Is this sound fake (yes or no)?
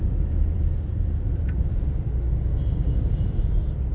yes